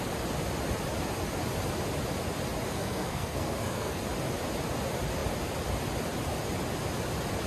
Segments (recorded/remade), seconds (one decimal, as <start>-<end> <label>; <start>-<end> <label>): 0.0-2.7 recorded; 2.7-4.0 remade; 4.0-7.5 recorded